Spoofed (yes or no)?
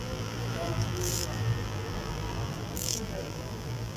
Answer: yes